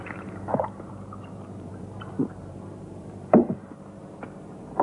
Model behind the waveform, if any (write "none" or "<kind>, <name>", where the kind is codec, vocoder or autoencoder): vocoder, BigVGAN v2